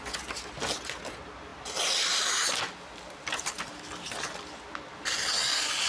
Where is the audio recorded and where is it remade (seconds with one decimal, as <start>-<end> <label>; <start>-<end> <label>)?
0.0-5.9 recorded